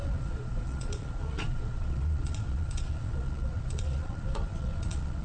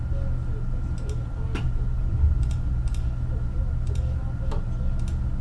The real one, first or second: second